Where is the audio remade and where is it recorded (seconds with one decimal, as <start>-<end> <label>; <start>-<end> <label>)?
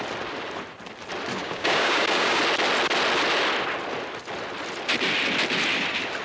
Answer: 0.0-1.4 recorded; 1.4-2.4 remade; 2.4-6.2 recorded